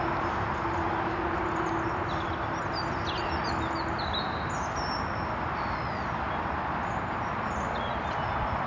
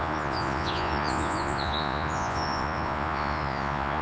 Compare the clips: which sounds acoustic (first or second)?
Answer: first